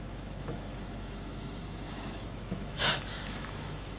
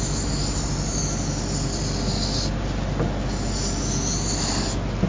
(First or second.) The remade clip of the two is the first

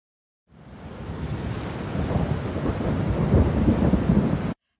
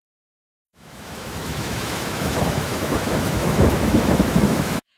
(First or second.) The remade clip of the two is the second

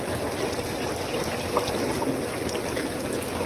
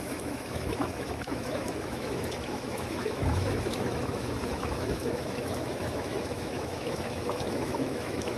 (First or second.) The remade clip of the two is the second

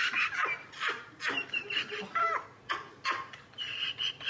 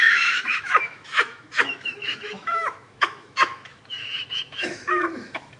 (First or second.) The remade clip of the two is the second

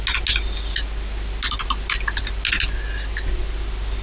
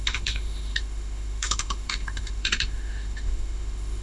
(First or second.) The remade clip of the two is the second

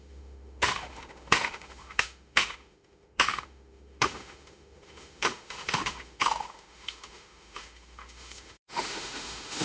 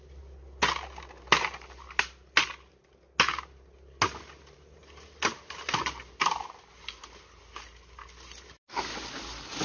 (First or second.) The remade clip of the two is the first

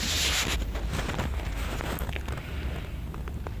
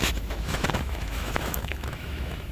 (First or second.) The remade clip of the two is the second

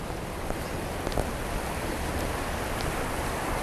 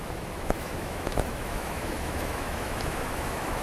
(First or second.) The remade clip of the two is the second